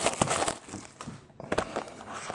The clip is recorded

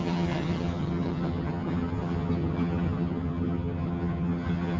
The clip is remade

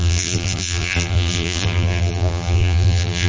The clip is remade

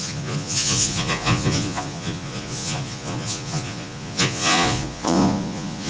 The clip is remade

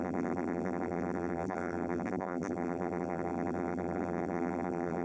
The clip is remade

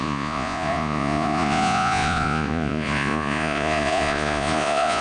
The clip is remade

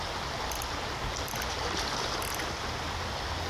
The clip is recorded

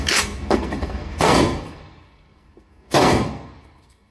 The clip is remade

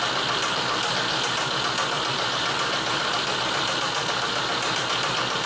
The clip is recorded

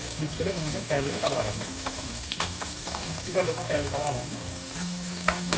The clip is remade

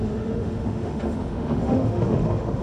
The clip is remade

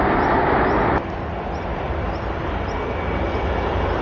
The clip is remade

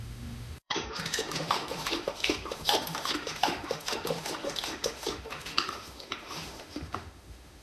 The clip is remade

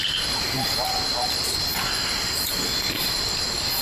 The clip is recorded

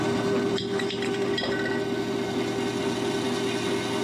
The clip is recorded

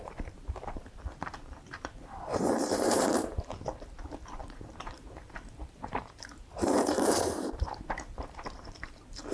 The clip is remade